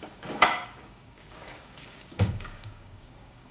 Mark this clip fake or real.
fake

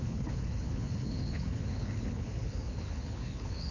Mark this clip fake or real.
fake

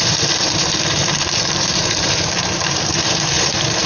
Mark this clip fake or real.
fake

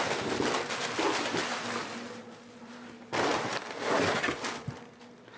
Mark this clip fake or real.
real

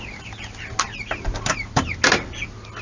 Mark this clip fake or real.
real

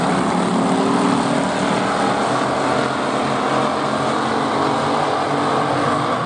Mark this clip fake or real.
real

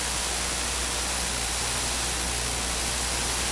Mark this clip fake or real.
real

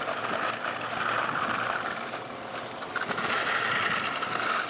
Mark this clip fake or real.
real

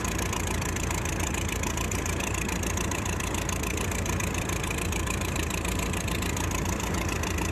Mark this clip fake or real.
fake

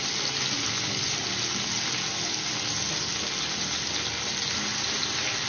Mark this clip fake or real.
real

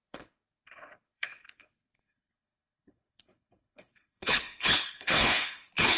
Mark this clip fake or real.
fake